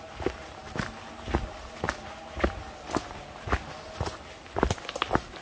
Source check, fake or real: real